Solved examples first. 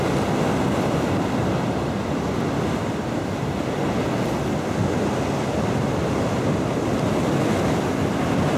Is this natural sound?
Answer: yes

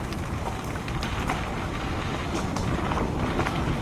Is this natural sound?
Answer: yes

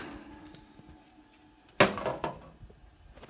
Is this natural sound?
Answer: yes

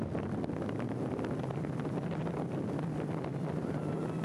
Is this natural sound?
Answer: yes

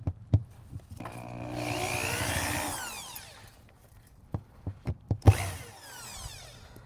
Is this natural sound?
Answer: yes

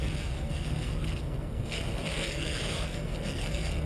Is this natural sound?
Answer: no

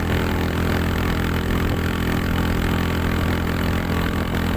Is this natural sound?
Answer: yes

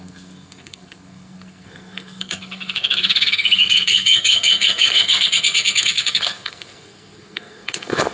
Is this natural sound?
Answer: no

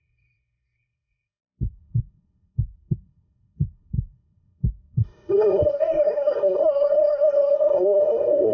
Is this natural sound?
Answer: no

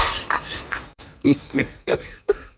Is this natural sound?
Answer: no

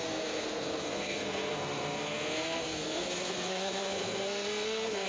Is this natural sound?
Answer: no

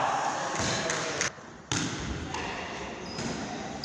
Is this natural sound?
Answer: yes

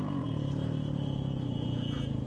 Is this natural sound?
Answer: yes